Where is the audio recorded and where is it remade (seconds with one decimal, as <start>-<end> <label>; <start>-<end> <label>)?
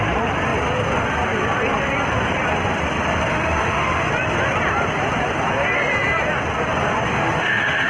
0.0-3.3 recorded; 3.3-4.1 remade; 4.1-7.1 recorded; 7.1-7.9 remade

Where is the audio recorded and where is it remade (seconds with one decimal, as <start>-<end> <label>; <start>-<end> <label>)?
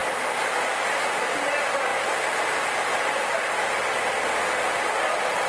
0.0-5.5 recorded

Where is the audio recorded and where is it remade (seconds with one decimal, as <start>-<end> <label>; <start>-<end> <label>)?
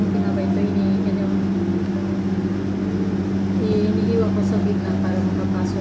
0.0-5.8 recorded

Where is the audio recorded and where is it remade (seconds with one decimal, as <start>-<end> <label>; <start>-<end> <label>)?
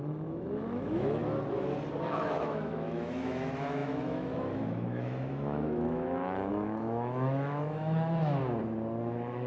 0.0-1.2 remade; 1.2-2.0 recorded; 2.0-8.4 remade; 8.4-9.0 recorded; 9.0-9.5 remade